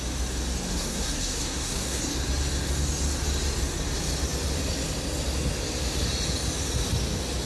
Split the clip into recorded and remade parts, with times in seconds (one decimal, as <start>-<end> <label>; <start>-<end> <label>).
0.0-0.7 recorded; 0.7-2.0 remade; 2.0-7.5 recorded